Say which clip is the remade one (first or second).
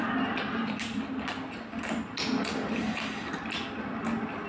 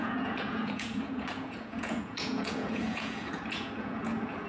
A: second